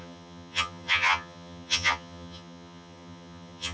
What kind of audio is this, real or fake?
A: fake